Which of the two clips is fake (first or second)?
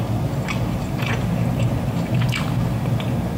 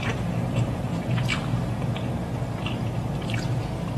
second